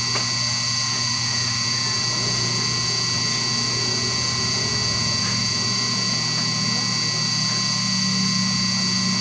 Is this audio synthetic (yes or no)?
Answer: no